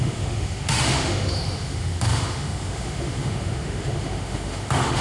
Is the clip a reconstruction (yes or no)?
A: yes